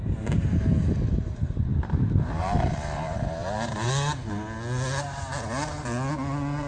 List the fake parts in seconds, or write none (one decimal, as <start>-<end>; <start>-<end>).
1.7-3.9